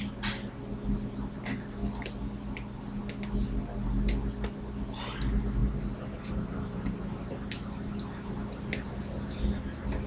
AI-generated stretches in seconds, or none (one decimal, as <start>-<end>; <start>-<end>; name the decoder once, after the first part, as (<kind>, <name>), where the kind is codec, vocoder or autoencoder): none